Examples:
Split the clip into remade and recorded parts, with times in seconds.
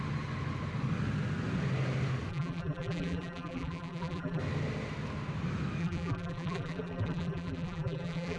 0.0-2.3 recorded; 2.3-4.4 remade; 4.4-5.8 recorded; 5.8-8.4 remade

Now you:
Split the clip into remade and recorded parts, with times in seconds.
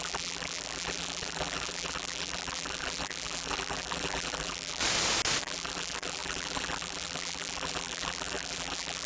0.0-4.8 remade; 4.8-5.4 recorded; 5.4-9.1 remade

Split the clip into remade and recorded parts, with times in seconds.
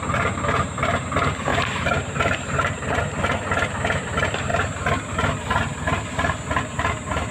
0.0-1.5 recorded; 1.5-3.0 remade; 3.0-7.3 recorded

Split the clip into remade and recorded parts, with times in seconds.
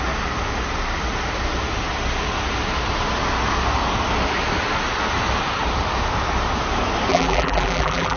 0.0-7.1 recorded; 7.1-8.2 remade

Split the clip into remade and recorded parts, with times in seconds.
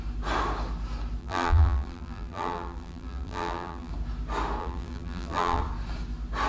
0.0-1.2 recorded; 1.2-3.9 remade; 3.9-4.6 recorded; 4.6-5.6 remade; 5.6-6.5 recorded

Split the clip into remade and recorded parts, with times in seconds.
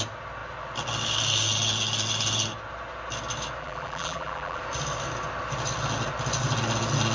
0.0-3.6 recorded; 3.6-4.6 remade; 4.6-7.1 recorded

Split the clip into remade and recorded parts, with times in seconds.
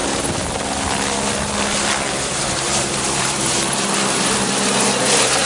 0.0-2.1 recorded; 2.1-3.5 remade; 3.5-5.0 recorded; 5.0-5.4 remade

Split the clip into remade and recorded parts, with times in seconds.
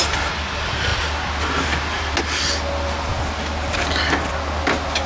0.0-5.1 recorded